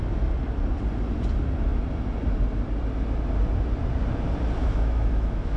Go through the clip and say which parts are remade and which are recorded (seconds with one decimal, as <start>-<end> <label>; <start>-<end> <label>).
0.0-4.6 recorded; 4.6-5.6 remade